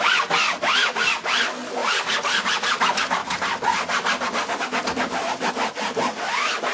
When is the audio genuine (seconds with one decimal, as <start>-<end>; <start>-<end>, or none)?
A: 0.0-6.7